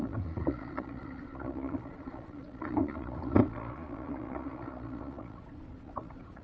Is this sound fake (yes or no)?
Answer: yes